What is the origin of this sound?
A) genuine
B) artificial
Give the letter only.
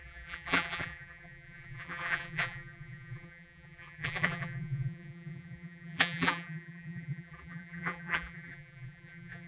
B